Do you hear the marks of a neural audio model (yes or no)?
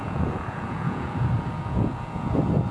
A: yes